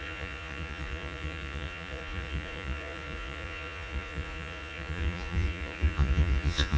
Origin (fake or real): fake